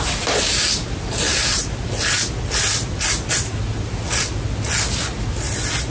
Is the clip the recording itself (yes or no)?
yes